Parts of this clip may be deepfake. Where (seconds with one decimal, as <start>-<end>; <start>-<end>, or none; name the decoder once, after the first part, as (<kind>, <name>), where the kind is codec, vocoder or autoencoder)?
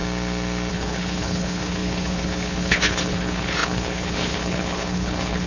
0.7-5.5 (codec, HILCodec)